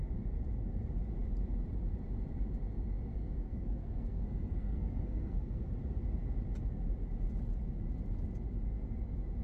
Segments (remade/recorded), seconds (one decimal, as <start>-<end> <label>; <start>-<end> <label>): 0.0-3.1 recorded; 3.1-5.7 remade; 5.7-9.4 recorded